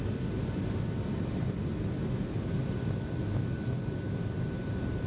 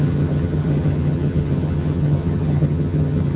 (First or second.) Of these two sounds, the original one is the first